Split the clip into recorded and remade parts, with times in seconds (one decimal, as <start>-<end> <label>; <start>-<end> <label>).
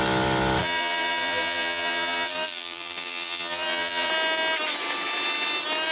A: 0.0-0.6 recorded; 0.6-4.1 remade; 4.1-5.9 recorded